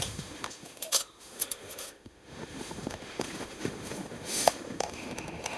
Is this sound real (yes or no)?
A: no